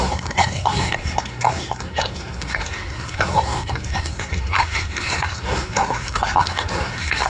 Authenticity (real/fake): fake